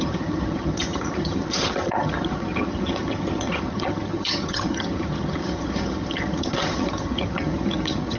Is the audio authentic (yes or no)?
no